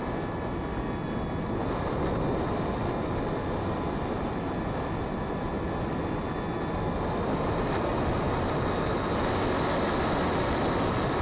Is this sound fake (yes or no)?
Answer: no